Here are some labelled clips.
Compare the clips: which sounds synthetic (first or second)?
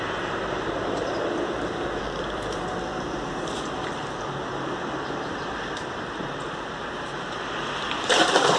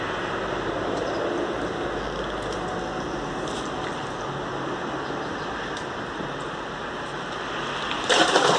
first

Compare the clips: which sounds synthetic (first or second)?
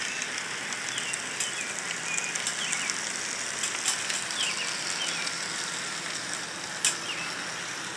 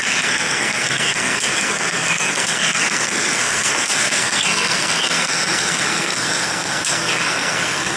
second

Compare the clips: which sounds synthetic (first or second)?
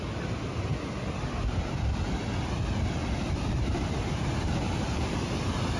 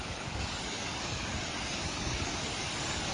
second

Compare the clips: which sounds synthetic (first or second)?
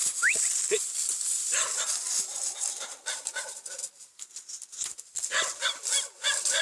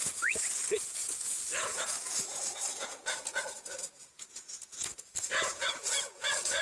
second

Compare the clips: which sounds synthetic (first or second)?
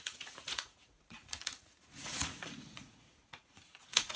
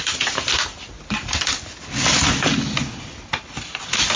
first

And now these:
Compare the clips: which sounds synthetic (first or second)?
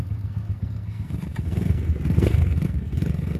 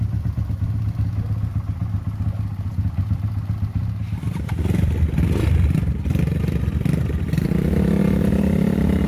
first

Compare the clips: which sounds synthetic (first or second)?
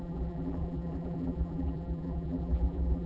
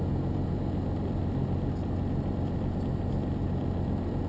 first